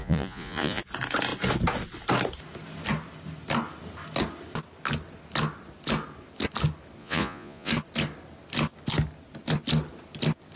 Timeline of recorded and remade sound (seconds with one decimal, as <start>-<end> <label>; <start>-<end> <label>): 0.0-0.8 remade; 0.8-7.0 recorded; 7.0-7.7 remade; 7.7-10.6 recorded